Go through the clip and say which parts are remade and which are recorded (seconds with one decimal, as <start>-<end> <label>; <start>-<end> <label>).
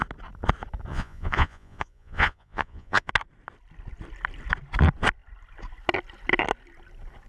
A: 0.0-0.9 recorded; 0.9-3.1 remade; 3.1-7.3 recorded